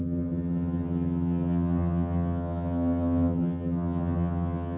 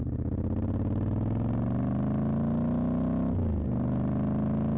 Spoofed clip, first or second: first